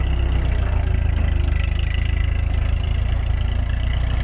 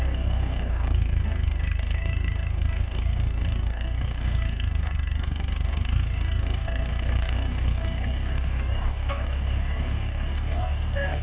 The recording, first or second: first